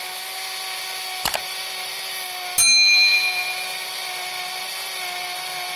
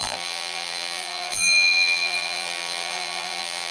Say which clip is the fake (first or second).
second